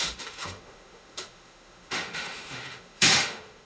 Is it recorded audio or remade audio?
remade